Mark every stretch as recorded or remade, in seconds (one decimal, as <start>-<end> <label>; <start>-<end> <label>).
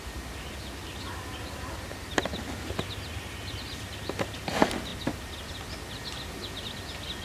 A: 0.0-4.9 recorded; 4.9-6.3 remade; 6.3-7.2 recorded